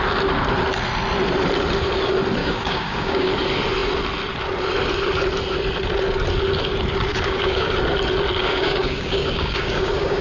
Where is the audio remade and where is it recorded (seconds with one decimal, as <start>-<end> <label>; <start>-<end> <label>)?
0.0-2.4 recorded; 2.4-3.3 remade; 3.3-7.1 recorded; 7.1-7.7 remade; 7.7-8.4 recorded; 8.4-10.2 remade